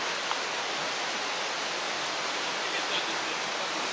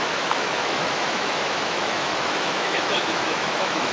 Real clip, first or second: first